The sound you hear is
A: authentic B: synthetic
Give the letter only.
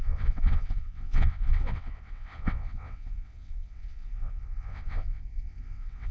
B